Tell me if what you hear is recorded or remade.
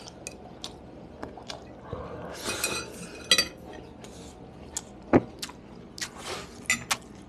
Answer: recorded